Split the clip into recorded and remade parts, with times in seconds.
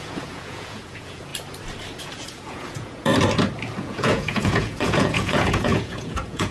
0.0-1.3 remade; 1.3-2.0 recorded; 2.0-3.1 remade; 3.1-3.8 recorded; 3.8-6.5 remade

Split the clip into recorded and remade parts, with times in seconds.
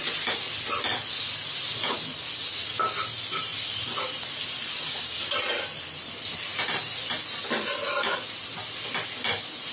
0.0-3.5 recorded; 3.5-5.2 remade; 5.2-9.7 recorded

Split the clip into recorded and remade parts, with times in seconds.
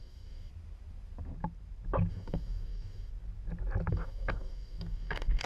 0.0-0.5 remade; 0.5-2.1 recorded; 2.1-3.1 remade; 3.1-3.9 recorded; 3.9-5.5 remade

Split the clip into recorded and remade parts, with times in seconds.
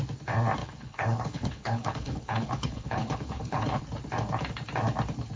0.0-0.6 recorded; 0.6-3.8 remade; 3.8-5.4 recorded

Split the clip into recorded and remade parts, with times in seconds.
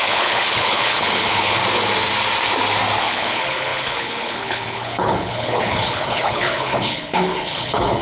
0.0-1.6 remade; 1.6-3.0 recorded; 3.0-8.0 remade